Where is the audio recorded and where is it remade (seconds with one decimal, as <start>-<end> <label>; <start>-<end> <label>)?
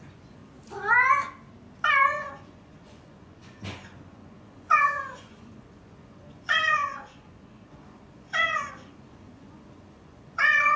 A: 0.0-0.4 remade; 0.4-1.9 recorded; 1.9-10.8 remade